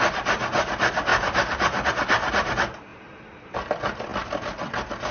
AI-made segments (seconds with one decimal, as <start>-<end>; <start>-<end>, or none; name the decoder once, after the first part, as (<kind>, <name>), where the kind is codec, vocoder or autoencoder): 1.1-1.9 (vocoder, BigVGAN v2); 2.9-3.6